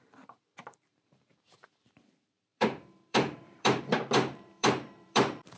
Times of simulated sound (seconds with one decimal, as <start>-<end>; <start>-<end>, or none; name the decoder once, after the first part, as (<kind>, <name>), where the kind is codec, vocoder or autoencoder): 0.0-5.6 (vocoder, BigVGAN v2)